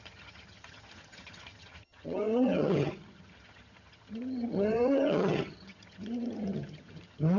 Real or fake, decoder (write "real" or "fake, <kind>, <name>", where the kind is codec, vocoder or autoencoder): fake, vocoder, HiFi-GAN